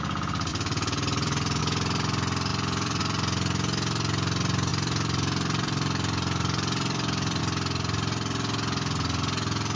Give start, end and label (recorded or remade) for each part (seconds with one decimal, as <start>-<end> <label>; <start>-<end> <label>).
0.0-0.5 recorded; 0.5-1.6 remade; 1.6-2.5 recorded; 2.5-3.0 remade; 3.0-4.7 recorded; 4.7-7.4 remade; 7.4-9.8 recorded